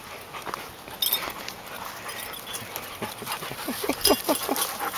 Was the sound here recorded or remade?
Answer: recorded